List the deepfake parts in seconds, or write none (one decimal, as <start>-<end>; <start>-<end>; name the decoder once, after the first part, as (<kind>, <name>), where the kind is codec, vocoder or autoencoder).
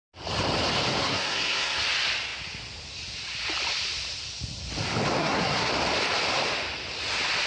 1.0-1.8 (codec, SNAC); 5.2-5.7